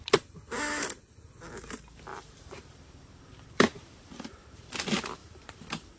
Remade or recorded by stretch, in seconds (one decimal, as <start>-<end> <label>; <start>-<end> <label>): 0.0-2.1 recorded; 2.1-4.7 remade; 4.7-5.2 recorded; 5.2-6.0 remade